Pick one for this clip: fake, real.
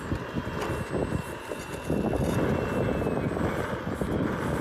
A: real